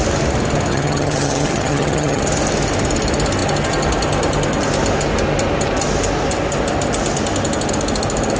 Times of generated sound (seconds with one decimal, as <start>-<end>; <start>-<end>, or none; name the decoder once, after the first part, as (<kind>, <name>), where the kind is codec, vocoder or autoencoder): 0.7-2.2 (vocoder, HiFi-GAN)